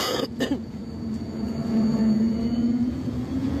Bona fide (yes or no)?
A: no